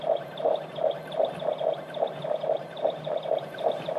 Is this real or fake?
fake